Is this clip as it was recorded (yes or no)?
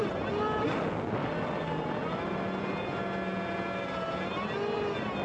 yes